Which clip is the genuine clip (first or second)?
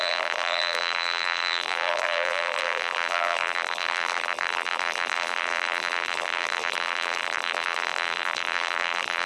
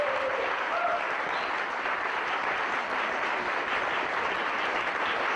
second